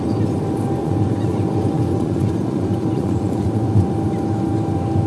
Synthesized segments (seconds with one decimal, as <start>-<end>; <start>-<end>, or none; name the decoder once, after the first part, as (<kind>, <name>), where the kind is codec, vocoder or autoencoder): 0.8-3.9 (vocoder, Vocos)